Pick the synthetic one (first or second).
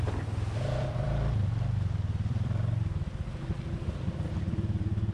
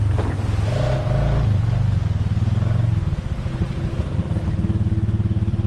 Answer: first